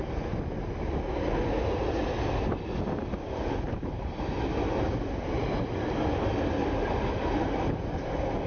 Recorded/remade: recorded